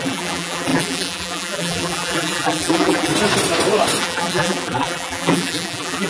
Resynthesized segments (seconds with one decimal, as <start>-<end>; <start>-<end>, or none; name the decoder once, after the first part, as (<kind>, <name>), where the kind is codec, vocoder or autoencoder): 0.0-3.1 (vocoder, BigVGAN v2); 4.0-6.1